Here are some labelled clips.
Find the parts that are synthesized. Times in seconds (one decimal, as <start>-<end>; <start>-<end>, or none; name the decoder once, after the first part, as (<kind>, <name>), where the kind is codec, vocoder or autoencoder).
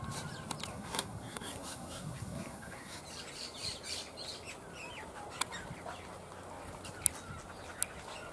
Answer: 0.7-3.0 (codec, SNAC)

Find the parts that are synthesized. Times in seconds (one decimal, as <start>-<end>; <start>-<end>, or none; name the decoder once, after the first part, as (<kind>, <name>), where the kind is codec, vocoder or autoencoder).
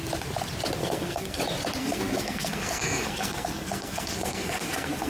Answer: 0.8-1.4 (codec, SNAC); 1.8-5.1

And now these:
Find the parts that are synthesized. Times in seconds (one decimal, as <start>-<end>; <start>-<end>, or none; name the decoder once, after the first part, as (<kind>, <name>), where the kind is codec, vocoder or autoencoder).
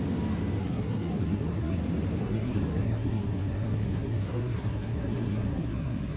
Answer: 0.6-1.8 (codec, SNAC); 2.2-6.2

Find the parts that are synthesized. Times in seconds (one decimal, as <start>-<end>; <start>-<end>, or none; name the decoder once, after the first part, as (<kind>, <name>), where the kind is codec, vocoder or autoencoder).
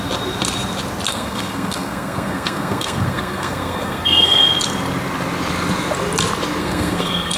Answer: 1.1-4.4 (codec, SNAC); 6.6-7.4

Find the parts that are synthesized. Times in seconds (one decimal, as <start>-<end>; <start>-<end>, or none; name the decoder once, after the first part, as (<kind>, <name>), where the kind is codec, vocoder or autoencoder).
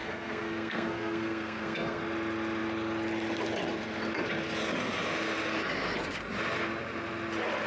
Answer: 0.0-2.0 (codec, SNAC)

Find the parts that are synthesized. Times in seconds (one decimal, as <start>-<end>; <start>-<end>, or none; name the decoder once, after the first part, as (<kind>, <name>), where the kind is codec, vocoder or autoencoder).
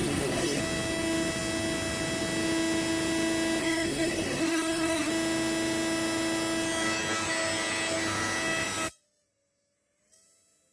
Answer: 0.0-0.6 (codec, SNAC); 3.6-5.1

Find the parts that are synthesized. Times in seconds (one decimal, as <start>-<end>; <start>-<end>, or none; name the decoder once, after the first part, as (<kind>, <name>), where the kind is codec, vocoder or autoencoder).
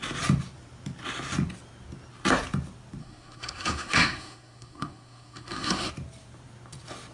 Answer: 3.0-5.9 (codec, SNAC)